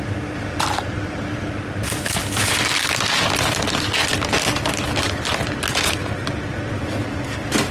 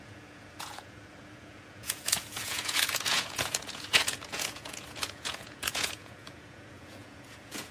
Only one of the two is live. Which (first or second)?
first